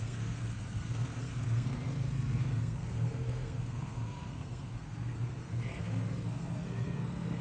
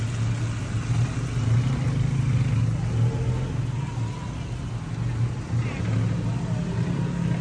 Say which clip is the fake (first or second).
first